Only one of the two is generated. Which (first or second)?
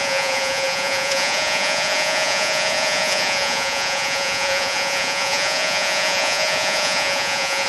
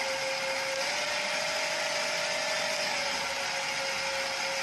first